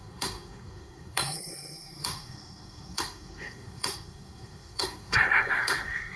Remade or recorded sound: remade